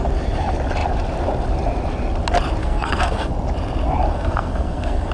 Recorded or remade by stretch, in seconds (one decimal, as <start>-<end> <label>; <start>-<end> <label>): 0.0-2.6 recorded; 2.6-3.3 remade; 3.3-4.1 recorded; 4.1-5.1 remade